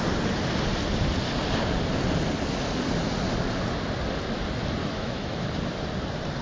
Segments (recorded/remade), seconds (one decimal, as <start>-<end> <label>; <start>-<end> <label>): 0.0-4.8 recorded; 4.8-5.4 remade; 5.4-6.4 recorded

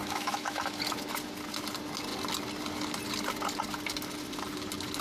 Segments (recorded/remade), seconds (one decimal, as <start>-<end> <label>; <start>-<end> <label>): 0.0-0.8 remade; 0.8-5.0 recorded

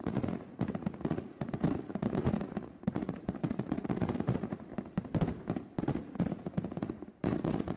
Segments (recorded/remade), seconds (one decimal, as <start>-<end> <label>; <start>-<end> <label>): 0.0-4.7 remade; 4.7-5.8 recorded; 5.8-7.8 remade

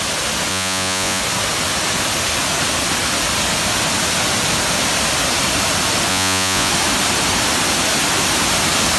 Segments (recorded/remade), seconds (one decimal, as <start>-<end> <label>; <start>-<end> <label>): 0.0-0.5 recorded; 0.5-1.2 remade; 1.2-6.1 recorded; 6.1-6.7 remade; 6.7-9.0 recorded

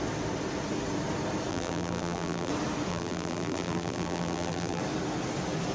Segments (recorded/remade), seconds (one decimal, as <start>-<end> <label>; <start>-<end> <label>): 0.0-1.5 recorded; 1.5-2.5 remade; 2.5-2.9 recorded; 2.9-4.8 remade; 4.8-5.7 recorded

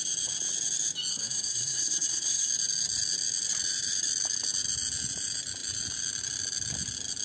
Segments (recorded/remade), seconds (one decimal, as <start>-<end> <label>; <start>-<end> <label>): 0.0-1.1 recorded; 1.1-2.5 remade; 2.5-7.2 recorded

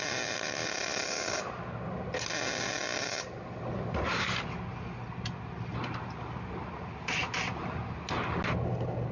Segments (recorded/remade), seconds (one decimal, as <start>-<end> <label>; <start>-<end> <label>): 0.0-9.1 recorded

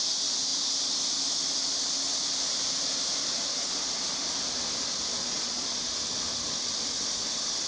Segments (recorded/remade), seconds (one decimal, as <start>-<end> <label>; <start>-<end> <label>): 0.0-5.2 recorded; 5.2-5.8 remade; 5.8-7.7 recorded